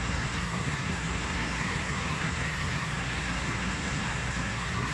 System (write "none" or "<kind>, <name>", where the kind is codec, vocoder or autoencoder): codec, SNAC